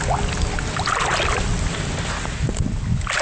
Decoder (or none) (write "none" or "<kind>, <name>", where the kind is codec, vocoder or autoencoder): none